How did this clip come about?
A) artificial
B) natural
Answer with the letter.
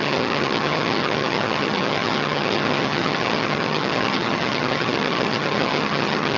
A